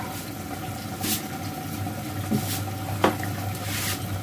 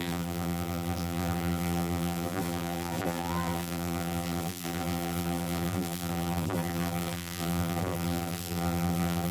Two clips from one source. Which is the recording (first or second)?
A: first